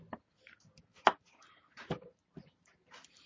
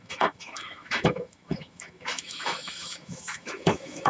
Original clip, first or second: first